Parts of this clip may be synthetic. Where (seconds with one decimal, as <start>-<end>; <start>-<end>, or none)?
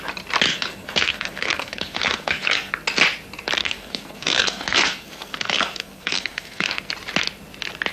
0.5-2.7; 3.6-6.9